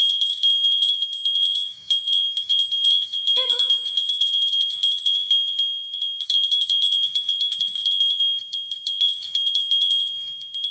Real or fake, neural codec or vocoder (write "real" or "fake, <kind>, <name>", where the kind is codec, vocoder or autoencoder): fake, autoencoder, DAC-VAE